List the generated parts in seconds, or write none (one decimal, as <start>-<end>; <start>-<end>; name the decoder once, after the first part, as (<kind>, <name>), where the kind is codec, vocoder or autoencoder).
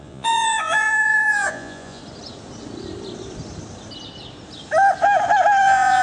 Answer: 0.0-2.0 (vocoder, Vocos); 5.6-6.0